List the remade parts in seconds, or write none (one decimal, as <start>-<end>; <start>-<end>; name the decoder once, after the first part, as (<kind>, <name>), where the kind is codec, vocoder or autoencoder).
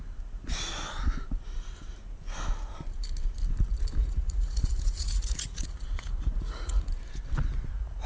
4.0-6.9 (vocoder, Vocos)